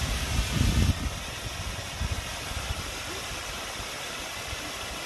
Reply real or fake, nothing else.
real